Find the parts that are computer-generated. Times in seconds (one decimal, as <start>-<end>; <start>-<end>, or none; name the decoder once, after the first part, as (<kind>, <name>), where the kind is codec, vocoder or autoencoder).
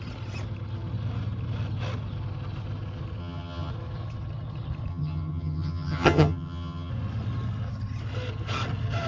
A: 3.2-3.7 (vocoder, HiFi-GAN); 4.9-6.9